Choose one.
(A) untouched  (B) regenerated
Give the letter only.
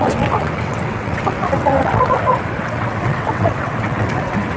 B